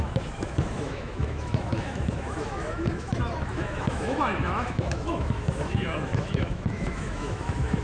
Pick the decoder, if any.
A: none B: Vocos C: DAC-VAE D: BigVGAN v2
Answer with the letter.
C